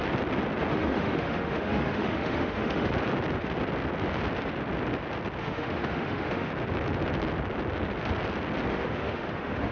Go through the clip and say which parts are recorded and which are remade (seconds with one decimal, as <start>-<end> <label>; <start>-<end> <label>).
0.0-0.7 recorded; 0.7-2.9 remade; 2.9-5.4 recorded; 5.4-6.5 remade; 6.5-8.7 recorded; 8.7-9.7 remade